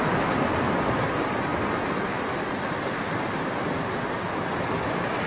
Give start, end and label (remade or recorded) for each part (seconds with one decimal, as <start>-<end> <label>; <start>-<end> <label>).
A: 0.0-5.3 recorded

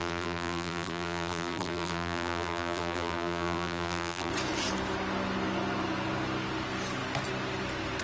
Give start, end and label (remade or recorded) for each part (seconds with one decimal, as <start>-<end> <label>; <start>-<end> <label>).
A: 0.0-4.3 remade; 4.3-8.0 recorded

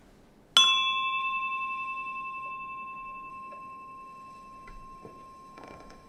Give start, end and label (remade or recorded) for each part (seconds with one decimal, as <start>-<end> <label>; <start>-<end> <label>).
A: 0.0-1.2 recorded; 1.2-2.5 remade; 2.5-3.3 recorded; 3.3-6.1 remade

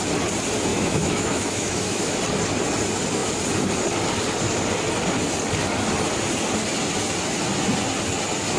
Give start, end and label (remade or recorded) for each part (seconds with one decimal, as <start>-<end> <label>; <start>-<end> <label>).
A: 0.0-0.7 recorded; 0.7-2.2 remade; 2.2-8.6 recorded

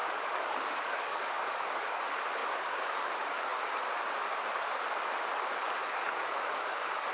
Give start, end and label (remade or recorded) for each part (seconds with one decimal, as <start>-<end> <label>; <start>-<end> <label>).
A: 0.0-2.0 remade; 2.0-2.4 recorded; 2.4-3.1 remade; 3.1-5.8 recorded; 5.8-7.1 remade